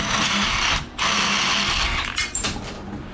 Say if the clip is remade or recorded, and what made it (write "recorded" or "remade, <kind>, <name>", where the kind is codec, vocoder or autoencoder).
recorded